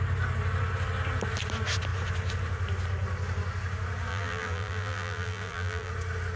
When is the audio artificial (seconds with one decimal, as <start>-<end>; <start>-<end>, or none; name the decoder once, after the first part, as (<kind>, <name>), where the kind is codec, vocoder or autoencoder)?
4.1-5.9 (vocoder, BigVGAN v2)